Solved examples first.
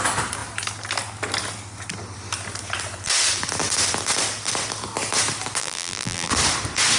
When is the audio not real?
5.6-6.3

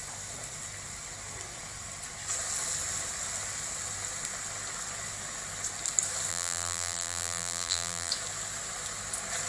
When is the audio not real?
6.3-8.1

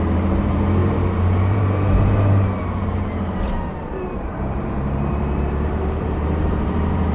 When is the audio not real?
0.0-7.1

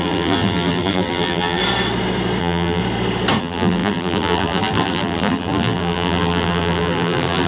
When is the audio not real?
0.0-1.6; 2.4-2.8; 3.4-7.5

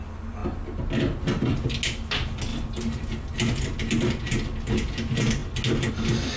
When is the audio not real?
none